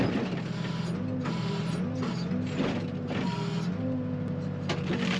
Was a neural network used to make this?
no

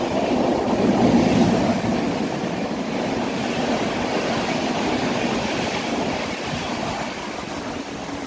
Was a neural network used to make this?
no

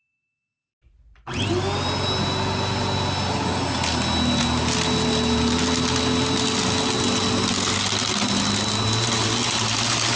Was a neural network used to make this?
no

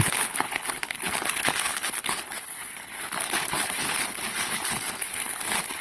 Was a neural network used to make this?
yes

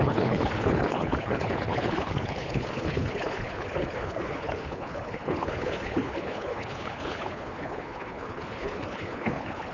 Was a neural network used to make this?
yes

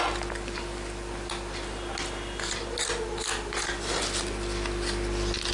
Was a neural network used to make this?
no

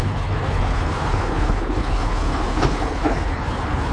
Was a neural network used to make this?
yes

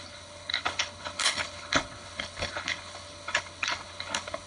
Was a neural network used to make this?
yes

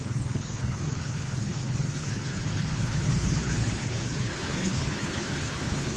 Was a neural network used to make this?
yes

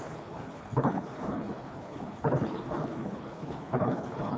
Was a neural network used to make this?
yes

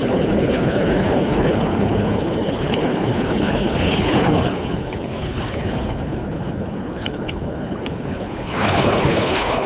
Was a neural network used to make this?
yes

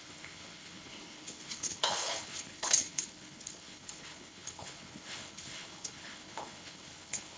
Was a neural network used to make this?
yes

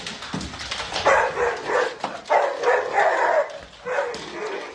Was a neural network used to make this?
no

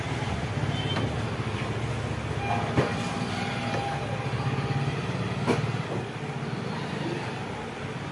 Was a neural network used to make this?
no